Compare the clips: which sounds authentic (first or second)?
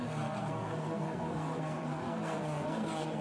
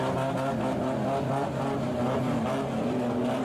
second